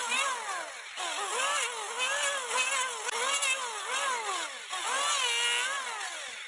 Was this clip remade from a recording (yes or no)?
no